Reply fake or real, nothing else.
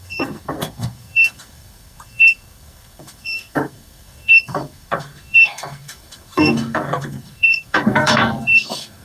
fake